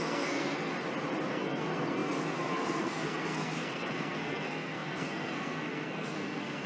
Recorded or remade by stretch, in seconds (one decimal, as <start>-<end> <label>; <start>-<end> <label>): 0.0-0.7 remade; 0.7-1.3 recorded; 1.3-6.7 remade